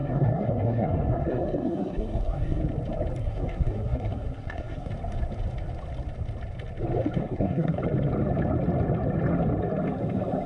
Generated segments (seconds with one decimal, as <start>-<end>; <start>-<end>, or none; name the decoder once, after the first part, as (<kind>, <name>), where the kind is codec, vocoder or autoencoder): 0.0-2.6 (codec, SNAC); 3.2-4.9; 7.2-7.8